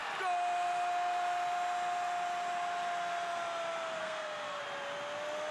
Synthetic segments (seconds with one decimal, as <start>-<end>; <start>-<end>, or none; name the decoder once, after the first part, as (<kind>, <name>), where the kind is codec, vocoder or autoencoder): 4.0-4.6 (codec, SNAC)

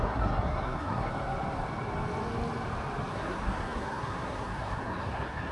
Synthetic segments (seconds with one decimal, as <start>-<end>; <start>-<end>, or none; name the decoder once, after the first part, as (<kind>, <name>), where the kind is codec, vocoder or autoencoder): 0.0-1.1 (codec, SNAC); 3.1-5.5